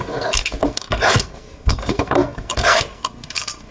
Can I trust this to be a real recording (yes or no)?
no